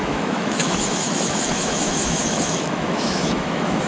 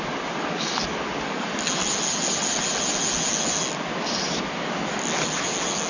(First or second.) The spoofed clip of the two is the first